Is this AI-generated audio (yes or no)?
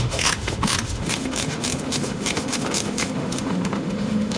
yes